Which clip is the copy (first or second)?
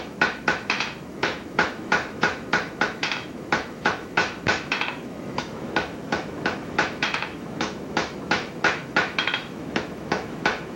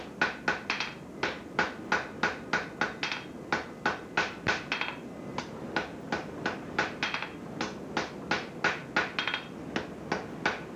first